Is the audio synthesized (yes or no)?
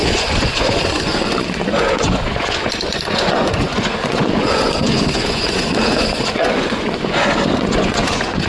yes